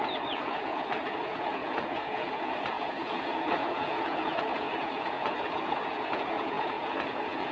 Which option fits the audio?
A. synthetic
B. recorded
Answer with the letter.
A